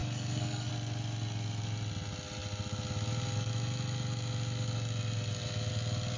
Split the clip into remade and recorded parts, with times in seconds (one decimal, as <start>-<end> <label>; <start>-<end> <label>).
0.0-0.7 remade; 0.7-6.2 recorded